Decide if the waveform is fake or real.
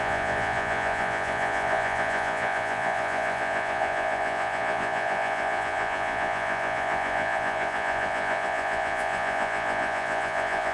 fake